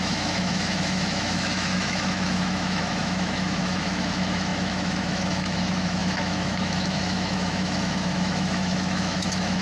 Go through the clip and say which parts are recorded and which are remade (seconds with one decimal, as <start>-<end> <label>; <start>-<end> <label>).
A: 0.0-9.6 remade